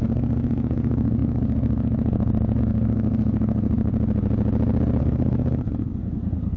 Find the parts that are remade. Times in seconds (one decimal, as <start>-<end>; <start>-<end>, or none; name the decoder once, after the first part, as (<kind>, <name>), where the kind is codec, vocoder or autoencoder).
0.0-3.9 (codec, SNAC); 5.0-6.6